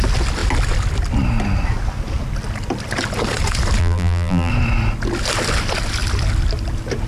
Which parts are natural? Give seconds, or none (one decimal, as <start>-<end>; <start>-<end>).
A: 0.0-3.8; 4.5-7.1